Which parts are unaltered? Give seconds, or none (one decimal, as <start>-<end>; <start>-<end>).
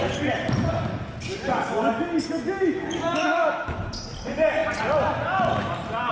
0.0-1.5; 3.9-6.1